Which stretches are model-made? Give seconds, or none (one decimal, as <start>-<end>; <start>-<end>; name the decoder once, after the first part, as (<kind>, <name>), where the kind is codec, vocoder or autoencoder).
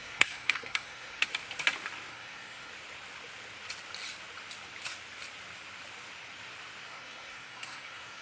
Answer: 0.0-1.3 (codec, SNAC); 2.1-2.7; 6.8-8.2